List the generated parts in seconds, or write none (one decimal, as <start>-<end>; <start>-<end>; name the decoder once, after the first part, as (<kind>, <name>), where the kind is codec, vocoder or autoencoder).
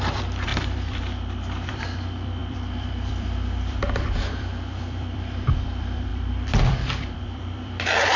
0.0-8.2 (vocoder, BigVGAN v2)